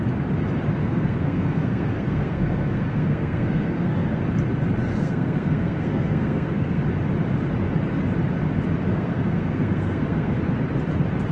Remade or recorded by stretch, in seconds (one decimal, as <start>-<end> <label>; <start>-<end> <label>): 0.0-0.8 recorded; 0.8-4.2 remade; 4.2-4.9 recorded; 4.9-6.8 remade; 6.8-8.9 recorded; 8.9-10.5 remade; 10.5-11.3 recorded

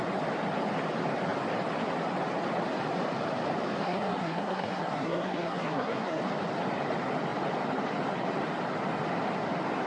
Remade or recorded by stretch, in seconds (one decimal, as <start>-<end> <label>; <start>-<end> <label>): 0.0-3.8 recorded; 3.8-6.2 remade; 6.2-9.9 recorded

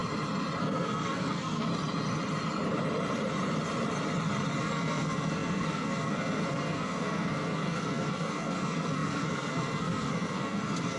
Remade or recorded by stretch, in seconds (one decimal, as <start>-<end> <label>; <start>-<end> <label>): 0.0-0.6 recorded; 0.6-1.7 remade; 1.7-4.6 recorded; 4.6-11.0 remade

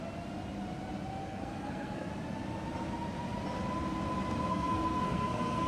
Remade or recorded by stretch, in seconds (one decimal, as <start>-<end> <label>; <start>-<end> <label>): 0.0-1.2 recorded; 1.2-2.1 remade; 2.1-4.5 recorded; 4.5-5.7 remade

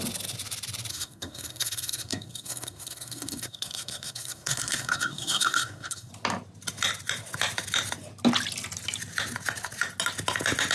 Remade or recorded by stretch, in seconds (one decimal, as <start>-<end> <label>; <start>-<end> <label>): 0.0-0.9 recorded; 0.9-6.1 remade; 6.1-10.7 recorded

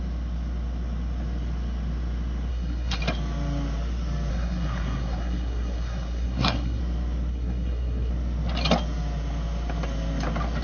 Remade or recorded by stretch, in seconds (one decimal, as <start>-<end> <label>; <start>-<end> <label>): 0.0-2.5 recorded; 2.5-3.0 remade; 3.0-4.3 recorded; 4.3-6.8 remade; 6.8-7.3 recorded; 7.3-8.1 remade; 8.1-10.6 recorded

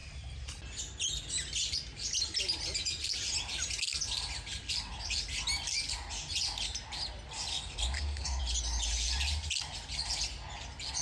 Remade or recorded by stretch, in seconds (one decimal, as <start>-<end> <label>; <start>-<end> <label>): 0.0-7.5 recorded; 7.5-8.4 remade; 8.4-11.0 recorded

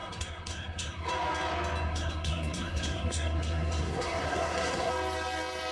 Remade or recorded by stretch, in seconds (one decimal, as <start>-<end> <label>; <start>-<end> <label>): 0.0-1.1 remade; 1.1-1.9 recorded; 1.9-4.9 remade; 4.9-5.7 recorded